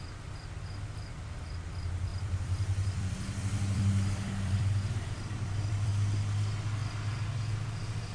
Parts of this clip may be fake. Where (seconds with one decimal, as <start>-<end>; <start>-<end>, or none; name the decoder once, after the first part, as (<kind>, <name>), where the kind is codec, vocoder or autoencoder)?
2.1-5.9 (vocoder, BigVGAN v2)

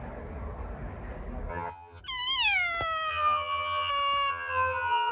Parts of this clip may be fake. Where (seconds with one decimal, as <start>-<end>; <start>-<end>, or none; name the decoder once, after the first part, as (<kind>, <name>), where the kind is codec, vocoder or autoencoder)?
1.5-2.0 (vocoder, HiFi-GAN); 3.1-3.9; 4.3-5.1